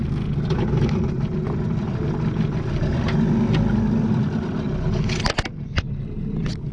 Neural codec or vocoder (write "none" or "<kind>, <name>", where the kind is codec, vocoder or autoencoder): none